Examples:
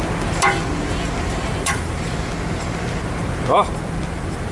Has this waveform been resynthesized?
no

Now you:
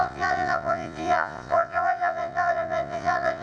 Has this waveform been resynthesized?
yes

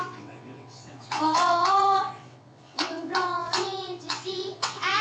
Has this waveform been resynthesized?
yes